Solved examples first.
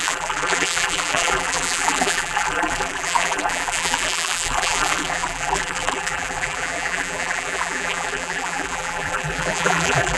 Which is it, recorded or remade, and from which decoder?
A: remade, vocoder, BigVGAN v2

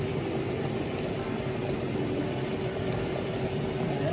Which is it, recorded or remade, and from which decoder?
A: remade, vocoder, BigVGAN v2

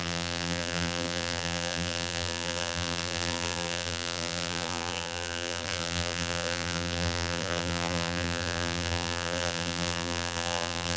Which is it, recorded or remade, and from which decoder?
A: remade, vocoder, BigVGAN v2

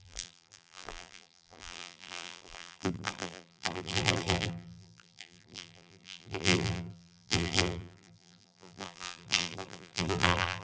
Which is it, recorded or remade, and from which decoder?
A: remade, vocoder, BigVGAN v2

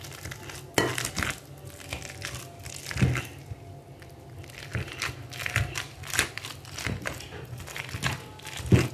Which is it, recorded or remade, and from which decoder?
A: recorded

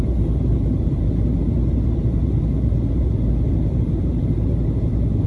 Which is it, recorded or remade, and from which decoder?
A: remade, vocoder, BigVGAN v2